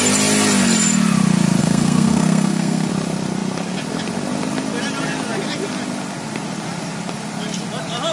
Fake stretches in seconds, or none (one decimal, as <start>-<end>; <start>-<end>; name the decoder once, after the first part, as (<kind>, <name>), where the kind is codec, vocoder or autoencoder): 1.6-2.9 (codec, SNAC)